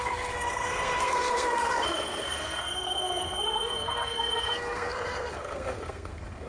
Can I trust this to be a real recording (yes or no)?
no